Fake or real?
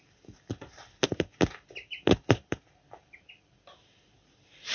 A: real